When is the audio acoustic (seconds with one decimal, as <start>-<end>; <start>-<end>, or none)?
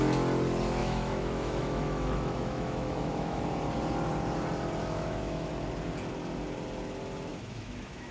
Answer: 0.0-0.8; 3.4-4.8; 5.5-7.3